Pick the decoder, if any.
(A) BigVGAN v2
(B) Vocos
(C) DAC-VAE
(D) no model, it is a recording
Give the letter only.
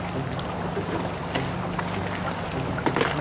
D